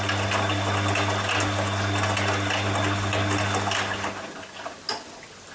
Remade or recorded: recorded